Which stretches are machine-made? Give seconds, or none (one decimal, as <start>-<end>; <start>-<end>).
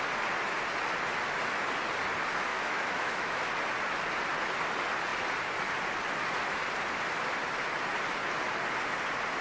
2.5-3.5